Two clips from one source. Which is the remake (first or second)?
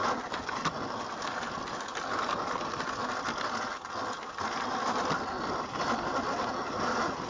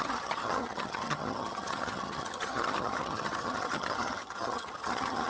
second